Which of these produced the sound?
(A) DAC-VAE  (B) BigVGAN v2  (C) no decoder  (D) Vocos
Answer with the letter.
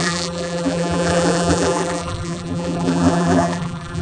B